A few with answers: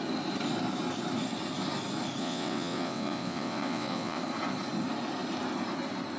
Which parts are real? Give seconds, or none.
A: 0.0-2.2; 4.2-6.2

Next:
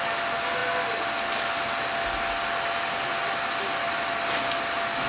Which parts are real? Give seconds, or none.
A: 0.0-5.1

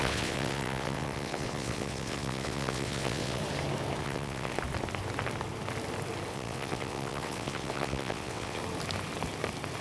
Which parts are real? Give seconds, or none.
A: 3.4-4.0; 4.5-6.3; 8.6-9.8

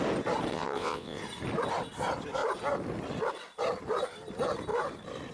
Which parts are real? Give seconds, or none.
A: 0.0-0.5; 1.2-5.3

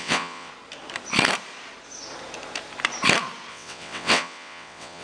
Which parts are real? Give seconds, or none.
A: 0.5-3.5

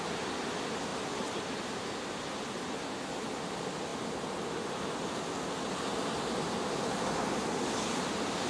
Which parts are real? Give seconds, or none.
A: 0.0-8.5

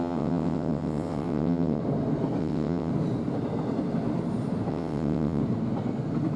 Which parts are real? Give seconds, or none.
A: 1.8-2.4; 2.9-4.7; 5.4-6.4

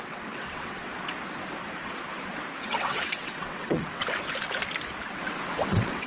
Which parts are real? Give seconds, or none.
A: 0.9-2.6; 4.0-5.6